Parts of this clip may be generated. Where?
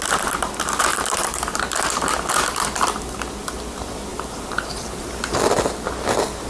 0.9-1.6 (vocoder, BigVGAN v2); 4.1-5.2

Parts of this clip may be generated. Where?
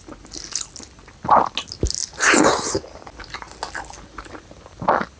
none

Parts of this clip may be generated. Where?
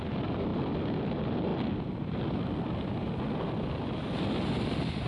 none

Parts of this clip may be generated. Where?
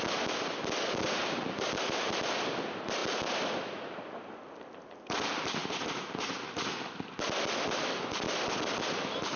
1.2-2.2 (vocoder, BigVGAN v2); 5.6-6.6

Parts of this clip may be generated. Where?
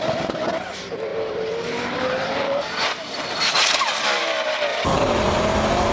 1.1-4.0 (vocoder, BigVGAN v2); 4.7-5.9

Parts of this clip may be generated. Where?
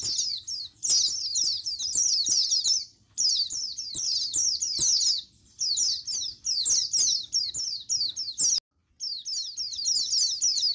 1.3-4.0 (vocoder, BigVGAN v2)